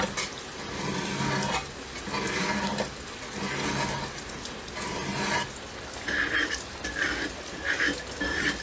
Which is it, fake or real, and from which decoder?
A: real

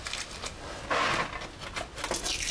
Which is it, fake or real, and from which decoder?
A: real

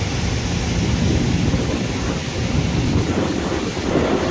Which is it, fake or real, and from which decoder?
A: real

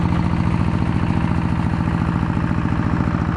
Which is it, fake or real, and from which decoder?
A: real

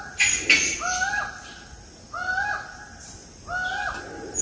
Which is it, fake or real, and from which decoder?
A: real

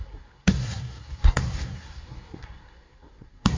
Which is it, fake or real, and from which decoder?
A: fake, codec, SNAC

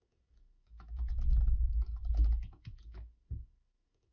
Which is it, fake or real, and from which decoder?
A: fake, autoencoder, DAC-VAE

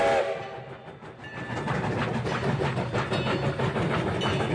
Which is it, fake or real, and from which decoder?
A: real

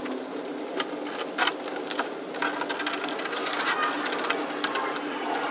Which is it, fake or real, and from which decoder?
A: real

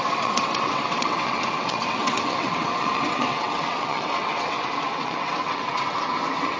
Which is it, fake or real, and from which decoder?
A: fake, vocoder, WaveNeXt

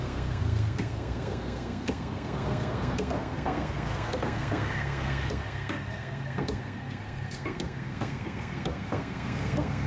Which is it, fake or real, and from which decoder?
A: fake, codec, SNAC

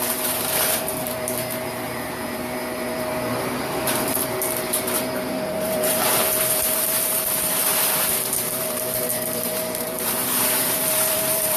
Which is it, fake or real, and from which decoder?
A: fake, vocoder, BigVGAN v2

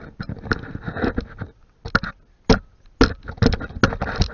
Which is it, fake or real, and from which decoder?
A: real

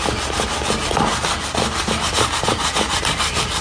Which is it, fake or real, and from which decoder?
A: real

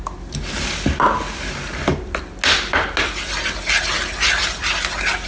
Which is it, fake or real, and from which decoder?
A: real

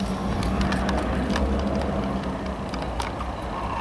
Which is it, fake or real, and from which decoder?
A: real